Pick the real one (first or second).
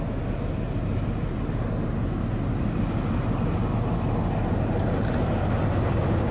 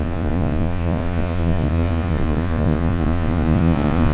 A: first